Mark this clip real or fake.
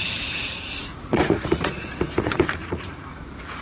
fake